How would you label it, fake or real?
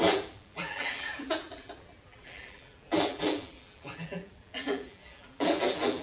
fake